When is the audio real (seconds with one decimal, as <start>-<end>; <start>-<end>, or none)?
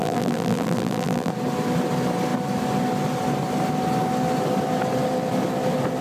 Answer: 1.3-6.0